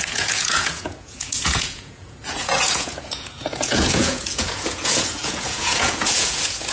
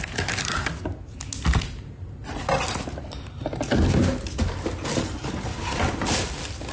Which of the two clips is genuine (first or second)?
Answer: second